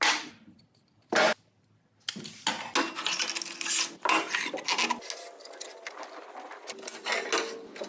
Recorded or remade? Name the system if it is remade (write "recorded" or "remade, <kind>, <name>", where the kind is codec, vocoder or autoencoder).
recorded